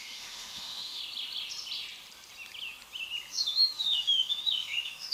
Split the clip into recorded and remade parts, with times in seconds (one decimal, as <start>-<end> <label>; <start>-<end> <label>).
0.0-1.0 remade; 1.0-3.3 recorded; 3.3-5.1 remade